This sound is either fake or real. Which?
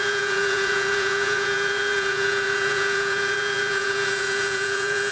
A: fake